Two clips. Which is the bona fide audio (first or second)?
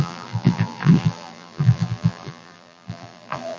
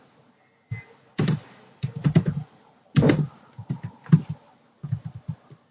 second